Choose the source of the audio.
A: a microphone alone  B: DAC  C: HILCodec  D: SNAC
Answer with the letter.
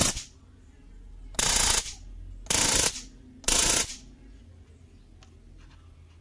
A